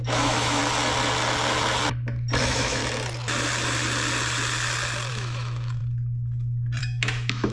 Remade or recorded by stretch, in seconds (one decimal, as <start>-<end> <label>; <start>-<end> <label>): 0.0-0.6 remade; 0.6-2.4 recorded; 2.4-2.8 remade; 2.8-5.1 recorded; 5.1-5.8 remade; 5.8-6.8 recorded; 6.8-7.5 remade